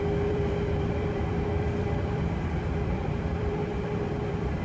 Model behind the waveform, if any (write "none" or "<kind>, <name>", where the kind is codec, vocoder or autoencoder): vocoder, BigVGAN v2